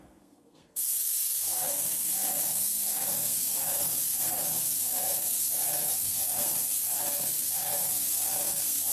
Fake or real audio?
fake